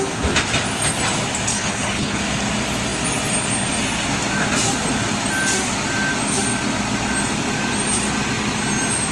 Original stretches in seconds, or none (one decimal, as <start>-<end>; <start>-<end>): 0.0-1.5; 2.2-9.1